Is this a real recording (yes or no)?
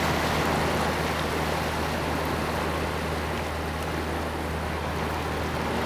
yes